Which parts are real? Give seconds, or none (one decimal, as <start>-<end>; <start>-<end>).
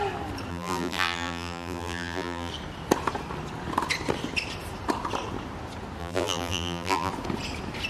0.0-0.5; 2.5-6.0; 7.1-7.9